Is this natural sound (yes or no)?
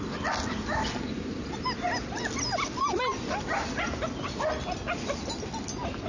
yes